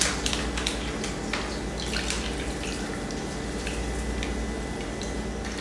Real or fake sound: real